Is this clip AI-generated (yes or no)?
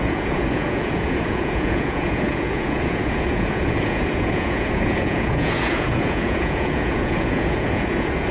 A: yes